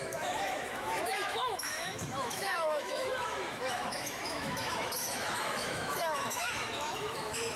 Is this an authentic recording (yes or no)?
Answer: no